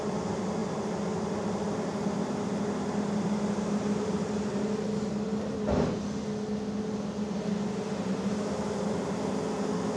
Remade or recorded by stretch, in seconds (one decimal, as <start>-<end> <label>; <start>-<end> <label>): 0.0-10.0 recorded